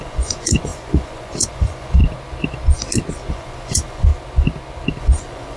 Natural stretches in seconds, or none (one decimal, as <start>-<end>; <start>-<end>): 2.0-3.3; 4.1-5.0